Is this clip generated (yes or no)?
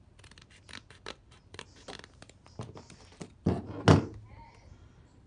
no